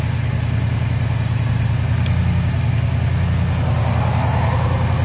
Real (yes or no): yes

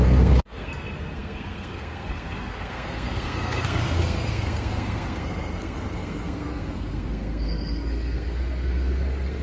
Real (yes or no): no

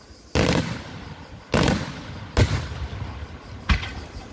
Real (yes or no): yes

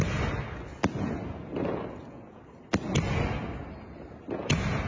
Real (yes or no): yes